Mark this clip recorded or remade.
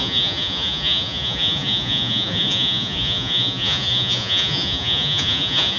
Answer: remade